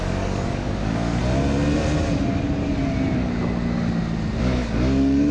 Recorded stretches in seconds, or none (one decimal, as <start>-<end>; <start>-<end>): 1.2-4.4